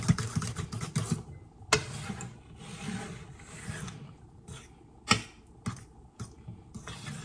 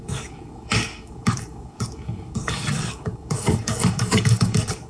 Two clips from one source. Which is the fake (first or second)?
second